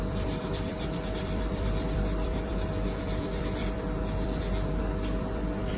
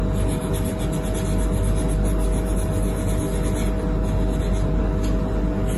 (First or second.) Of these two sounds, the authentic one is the second